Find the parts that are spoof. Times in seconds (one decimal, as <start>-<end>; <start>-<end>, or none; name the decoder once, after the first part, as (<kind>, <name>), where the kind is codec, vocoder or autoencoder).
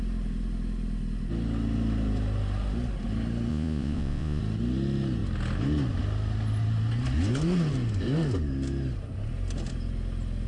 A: 3.5-4.4 (vocoder, Vocos)